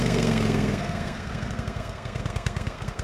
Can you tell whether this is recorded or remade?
remade